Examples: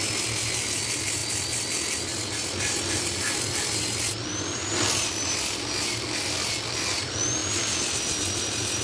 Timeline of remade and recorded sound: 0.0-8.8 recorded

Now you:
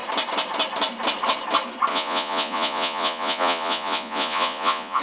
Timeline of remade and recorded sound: 0.0-1.9 recorded; 1.9-5.0 remade

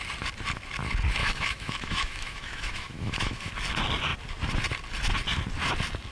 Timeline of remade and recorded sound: 0.0-1.2 recorded; 1.2-3.5 remade; 3.5-6.1 recorded

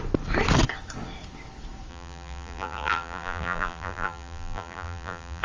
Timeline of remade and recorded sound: 0.0-1.9 recorded; 1.9-5.4 remade

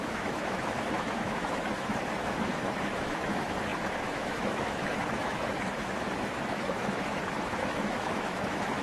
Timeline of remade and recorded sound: 0.0-8.8 remade

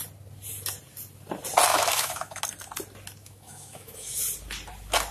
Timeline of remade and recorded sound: 0.0-1.7 recorded; 1.7-2.4 remade; 2.4-3.2 recorded; 3.2-4.2 remade; 4.2-5.1 recorded

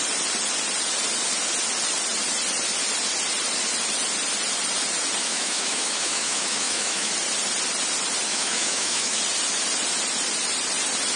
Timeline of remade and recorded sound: 0.0-5.2 recorded; 5.2-7.1 remade; 7.1-8.3 recorded; 8.3-9.2 remade; 9.2-11.2 recorded